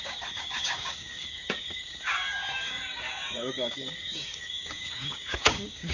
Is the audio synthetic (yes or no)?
yes